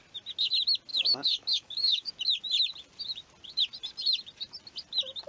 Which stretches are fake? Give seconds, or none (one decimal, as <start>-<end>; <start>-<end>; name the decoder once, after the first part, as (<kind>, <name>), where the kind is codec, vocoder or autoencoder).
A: 0.9-2.1 (codec, DAC)